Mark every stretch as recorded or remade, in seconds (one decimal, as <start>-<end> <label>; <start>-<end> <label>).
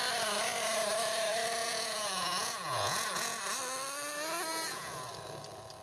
0.0-1.6 recorded; 1.6-3.4 remade; 3.4-4.5 recorded; 4.5-5.1 remade; 5.1-5.8 recorded